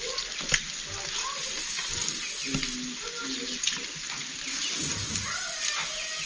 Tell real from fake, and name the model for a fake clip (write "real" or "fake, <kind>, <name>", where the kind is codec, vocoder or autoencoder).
real